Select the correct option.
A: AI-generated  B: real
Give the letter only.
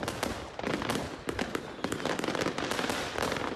B